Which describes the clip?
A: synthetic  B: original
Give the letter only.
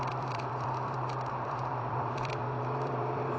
A